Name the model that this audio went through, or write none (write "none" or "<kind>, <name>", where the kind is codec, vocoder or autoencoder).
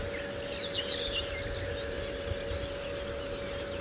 none